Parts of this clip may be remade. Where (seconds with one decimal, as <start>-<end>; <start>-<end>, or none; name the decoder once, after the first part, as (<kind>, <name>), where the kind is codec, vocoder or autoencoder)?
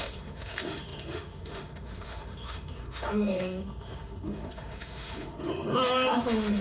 0.0-6.6 (autoencoder, DAC-VAE)